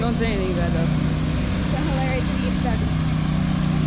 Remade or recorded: recorded